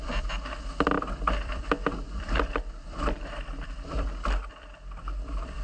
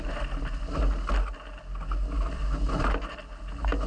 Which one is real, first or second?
second